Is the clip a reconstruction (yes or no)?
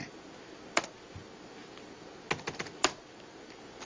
no